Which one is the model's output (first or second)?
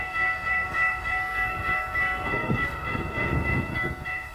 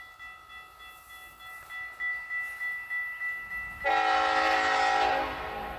first